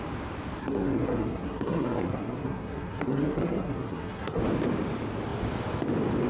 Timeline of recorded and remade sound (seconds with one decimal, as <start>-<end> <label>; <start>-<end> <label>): 0.0-0.6 recorded; 0.6-4.4 remade; 4.4-6.3 recorded